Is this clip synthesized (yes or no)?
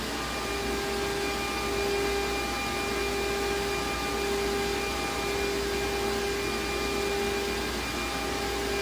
no